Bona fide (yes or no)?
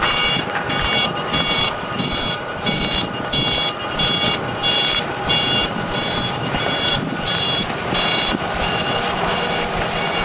no